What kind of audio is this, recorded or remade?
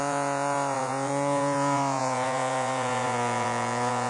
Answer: remade